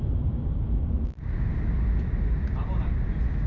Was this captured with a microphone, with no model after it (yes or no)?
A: yes